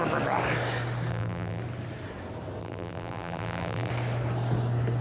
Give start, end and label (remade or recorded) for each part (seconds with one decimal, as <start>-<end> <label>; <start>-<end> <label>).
0.0-1.1 recorded; 1.1-1.6 remade; 1.6-2.6 recorded; 2.6-3.9 remade; 3.9-5.0 recorded